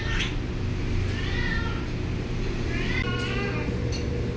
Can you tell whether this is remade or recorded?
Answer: recorded